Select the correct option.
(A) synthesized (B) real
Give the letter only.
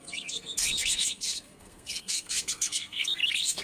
A